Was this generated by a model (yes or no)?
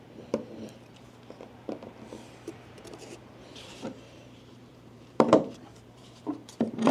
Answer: yes